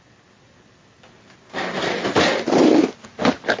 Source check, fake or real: real